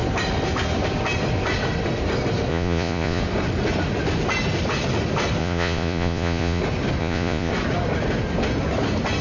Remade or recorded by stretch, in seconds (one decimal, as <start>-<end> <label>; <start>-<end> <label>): 0.0-2.5 recorded; 2.5-3.2 remade; 3.2-5.4 recorded; 5.4-6.6 remade; 6.6-7.0 recorded; 7.0-7.5 remade; 7.5-9.2 recorded